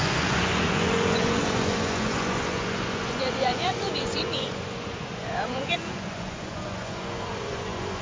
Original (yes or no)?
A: no